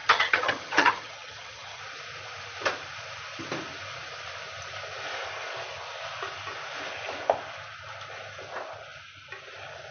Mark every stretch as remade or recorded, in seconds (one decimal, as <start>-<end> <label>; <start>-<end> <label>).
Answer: 0.0-1.8 remade; 1.8-9.9 recorded

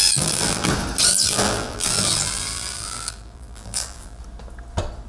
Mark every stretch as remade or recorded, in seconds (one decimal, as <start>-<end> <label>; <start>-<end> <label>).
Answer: 0.0-0.7 remade; 0.7-1.1 recorded; 1.1-4.2 remade; 4.2-5.1 recorded

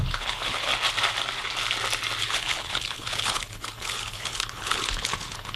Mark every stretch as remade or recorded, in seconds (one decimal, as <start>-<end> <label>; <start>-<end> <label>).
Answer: 0.0-0.7 remade; 0.7-2.2 recorded; 2.2-5.6 remade

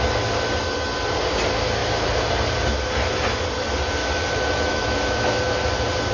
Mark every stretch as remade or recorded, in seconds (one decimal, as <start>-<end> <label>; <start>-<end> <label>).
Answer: 0.0-4.0 recorded; 4.0-5.4 remade; 5.4-6.1 recorded

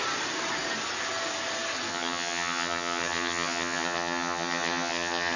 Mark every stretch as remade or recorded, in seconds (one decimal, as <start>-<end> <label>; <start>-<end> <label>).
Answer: 0.0-1.9 recorded; 1.9-5.4 remade